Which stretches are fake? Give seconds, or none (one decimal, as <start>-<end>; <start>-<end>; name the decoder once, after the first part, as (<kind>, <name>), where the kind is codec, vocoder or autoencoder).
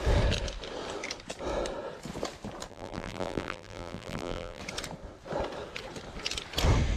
2.7-4.6 (vocoder, BigVGAN v2)